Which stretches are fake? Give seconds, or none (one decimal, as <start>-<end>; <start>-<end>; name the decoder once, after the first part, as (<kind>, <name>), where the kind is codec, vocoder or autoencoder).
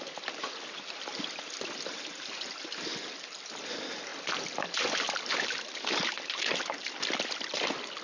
none